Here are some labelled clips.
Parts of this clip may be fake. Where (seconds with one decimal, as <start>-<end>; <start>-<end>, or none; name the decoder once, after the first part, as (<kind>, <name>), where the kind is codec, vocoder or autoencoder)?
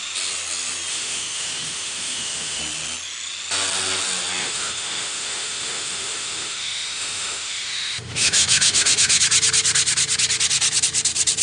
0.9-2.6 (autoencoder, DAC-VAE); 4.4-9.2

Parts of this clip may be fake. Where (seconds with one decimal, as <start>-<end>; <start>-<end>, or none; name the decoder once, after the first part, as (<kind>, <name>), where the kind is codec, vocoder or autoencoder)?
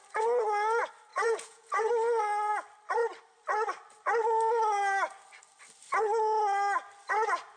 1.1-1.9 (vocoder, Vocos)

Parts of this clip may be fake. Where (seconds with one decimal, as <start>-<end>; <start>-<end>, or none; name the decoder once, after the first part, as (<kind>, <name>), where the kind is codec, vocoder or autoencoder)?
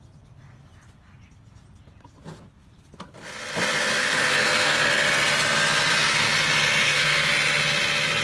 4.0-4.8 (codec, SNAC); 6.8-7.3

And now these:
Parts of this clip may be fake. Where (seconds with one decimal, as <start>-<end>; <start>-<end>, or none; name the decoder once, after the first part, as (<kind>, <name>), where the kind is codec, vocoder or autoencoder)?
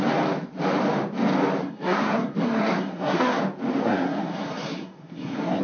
1.6-3.4 (codec, SNAC); 3.8-5.6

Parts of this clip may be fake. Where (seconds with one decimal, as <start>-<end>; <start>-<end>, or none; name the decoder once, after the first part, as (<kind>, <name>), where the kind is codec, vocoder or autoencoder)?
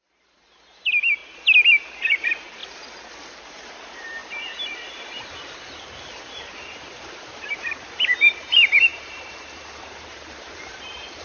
0.0-1.2 (vocoder, BigVGAN v2); 2.0-2.6; 3.4-11.2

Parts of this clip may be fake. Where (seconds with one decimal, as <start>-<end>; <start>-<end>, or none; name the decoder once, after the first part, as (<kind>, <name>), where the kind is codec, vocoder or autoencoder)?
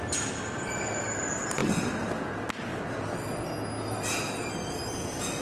none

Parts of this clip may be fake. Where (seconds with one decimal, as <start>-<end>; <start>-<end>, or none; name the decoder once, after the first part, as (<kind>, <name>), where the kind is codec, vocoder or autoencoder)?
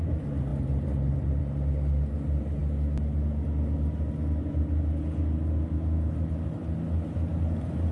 none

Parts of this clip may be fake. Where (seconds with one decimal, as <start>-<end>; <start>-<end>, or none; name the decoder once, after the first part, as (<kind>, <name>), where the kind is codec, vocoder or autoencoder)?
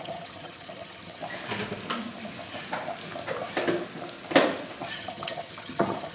0.0-1.2 (vocoder, HiFi-GAN); 4.9-6.1